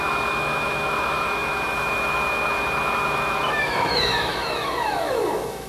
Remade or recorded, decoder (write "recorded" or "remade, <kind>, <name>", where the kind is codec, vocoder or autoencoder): remade, autoencoder, DAC-VAE